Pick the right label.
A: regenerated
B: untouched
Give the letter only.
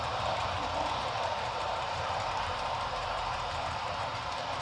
A